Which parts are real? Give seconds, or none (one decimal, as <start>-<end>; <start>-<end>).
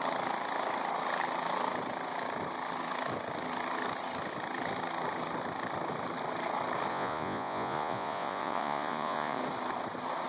0.0-6.9; 9.4-10.3